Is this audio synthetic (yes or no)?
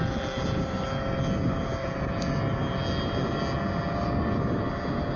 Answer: no